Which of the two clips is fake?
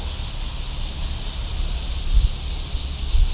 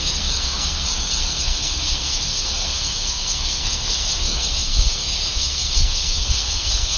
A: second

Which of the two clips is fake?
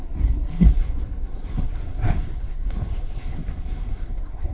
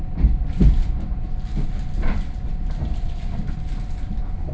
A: first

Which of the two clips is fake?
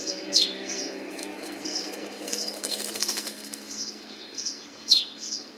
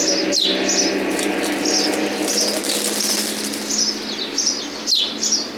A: first